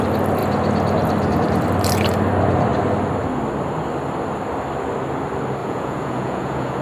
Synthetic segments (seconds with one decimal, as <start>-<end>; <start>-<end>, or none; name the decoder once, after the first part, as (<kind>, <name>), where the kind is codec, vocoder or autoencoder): 5.6-6.8 (vocoder, Vocos)